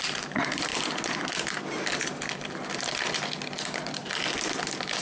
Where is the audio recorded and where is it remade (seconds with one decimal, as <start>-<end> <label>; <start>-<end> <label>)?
0.0-5.0 recorded